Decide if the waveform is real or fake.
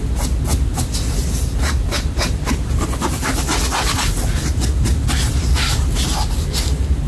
real